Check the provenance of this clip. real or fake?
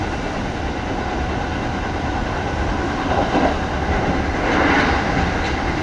real